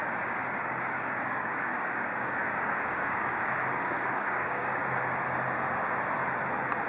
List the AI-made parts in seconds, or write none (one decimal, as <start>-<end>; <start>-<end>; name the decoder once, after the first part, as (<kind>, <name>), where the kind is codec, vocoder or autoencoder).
0.0-4.8 (codec, DAC)